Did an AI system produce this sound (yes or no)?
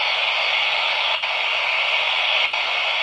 no